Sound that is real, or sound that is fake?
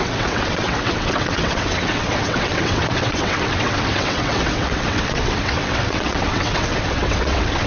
fake